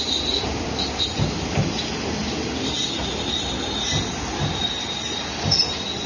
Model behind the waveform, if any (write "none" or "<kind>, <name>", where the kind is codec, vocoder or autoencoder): none